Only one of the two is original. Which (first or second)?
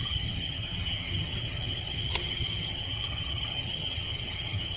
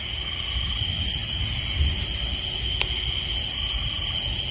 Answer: second